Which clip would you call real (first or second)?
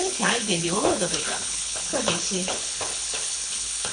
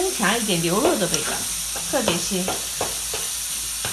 second